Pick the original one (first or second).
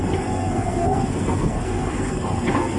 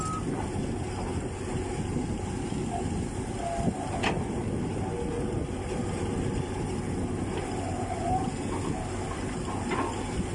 second